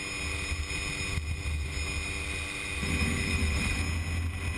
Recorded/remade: recorded